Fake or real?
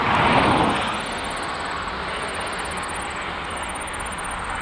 real